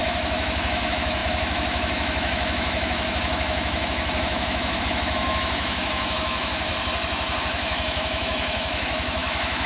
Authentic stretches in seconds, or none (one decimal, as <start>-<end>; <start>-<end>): 6.7-7.4